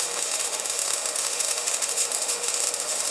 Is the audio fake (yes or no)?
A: yes